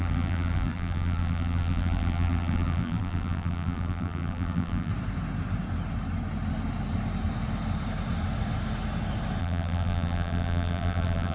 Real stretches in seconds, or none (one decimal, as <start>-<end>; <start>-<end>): 4.9-9.4